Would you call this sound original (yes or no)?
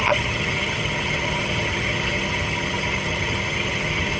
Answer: no